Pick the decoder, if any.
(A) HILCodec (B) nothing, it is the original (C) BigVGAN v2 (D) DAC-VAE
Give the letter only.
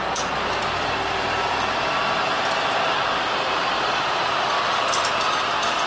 B